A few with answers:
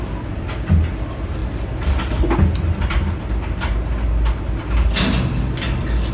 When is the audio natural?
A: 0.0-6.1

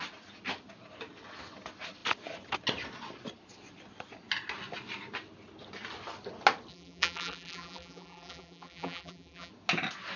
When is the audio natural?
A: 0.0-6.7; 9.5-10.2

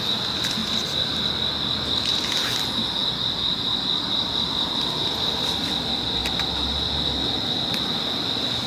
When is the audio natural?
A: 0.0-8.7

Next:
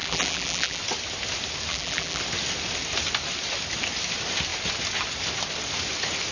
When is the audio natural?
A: 0.8-1.7; 2.2-6.3

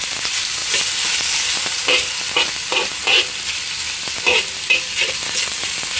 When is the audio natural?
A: 0.0-6.0